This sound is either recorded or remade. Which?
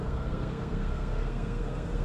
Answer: remade